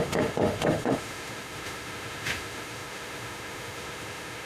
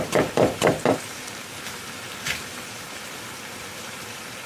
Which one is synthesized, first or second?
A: first